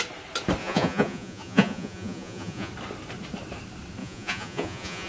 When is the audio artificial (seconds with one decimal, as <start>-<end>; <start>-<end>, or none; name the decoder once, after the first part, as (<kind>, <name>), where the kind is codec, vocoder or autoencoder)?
0.6-2.7 (vocoder, Vocos); 4.0-5.1